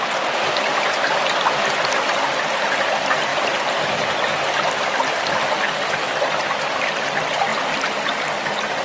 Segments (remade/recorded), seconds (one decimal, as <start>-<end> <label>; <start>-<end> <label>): 0.0-8.8 recorded

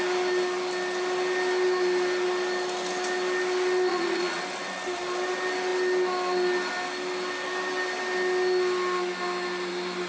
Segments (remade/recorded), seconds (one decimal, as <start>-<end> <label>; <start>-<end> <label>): 0.0-3.9 recorded; 3.9-4.4 remade; 4.4-10.1 recorded

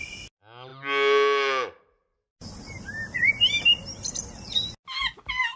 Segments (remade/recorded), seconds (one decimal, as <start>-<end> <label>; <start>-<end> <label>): 0.0-5.6 recorded

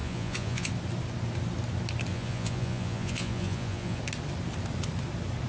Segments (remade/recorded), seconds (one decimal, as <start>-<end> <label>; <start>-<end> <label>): 0.0-0.7 remade; 0.7-2.1 recorded; 2.1-4.0 remade; 4.0-5.5 recorded

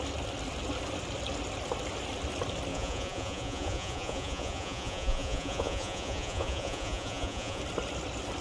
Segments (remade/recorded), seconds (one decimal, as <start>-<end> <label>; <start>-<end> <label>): 0.0-2.7 recorded; 2.7-7.6 remade; 7.6-8.4 recorded

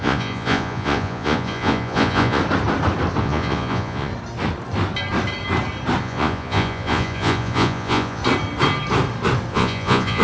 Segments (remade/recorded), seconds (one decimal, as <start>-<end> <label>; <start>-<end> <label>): 0.0-2.4 remade; 2.4-3.2 recorded; 3.2-4.1 remade; 4.1-6.0 recorded; 6.0-8.2 remade; 8.2-9.5 recorded; 9.5-10.2 remade

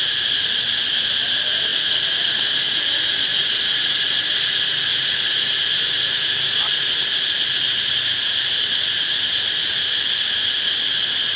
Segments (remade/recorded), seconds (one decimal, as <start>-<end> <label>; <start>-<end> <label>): 0.0-11.4 recorded

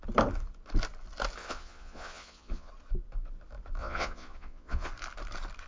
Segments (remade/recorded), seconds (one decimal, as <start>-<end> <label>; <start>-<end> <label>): 0.0-1.4 recorded; 1.4-2.7 remade; 2.7-3.8 recorded; 3.8-4.9 remade; 4.9-5.7 recorded